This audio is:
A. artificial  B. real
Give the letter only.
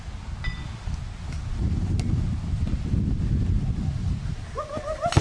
B